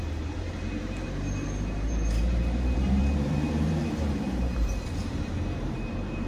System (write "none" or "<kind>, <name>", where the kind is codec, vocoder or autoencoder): vocoder, BigVGAN v2